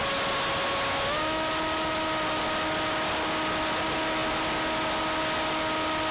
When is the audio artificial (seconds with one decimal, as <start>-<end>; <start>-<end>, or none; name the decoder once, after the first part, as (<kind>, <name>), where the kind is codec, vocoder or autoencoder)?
none